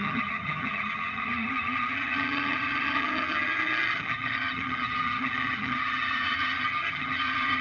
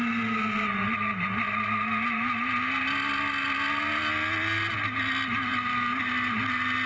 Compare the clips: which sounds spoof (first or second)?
first